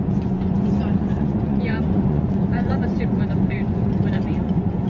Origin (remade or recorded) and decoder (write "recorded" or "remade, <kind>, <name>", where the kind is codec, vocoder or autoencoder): remade, vocoder, Vocos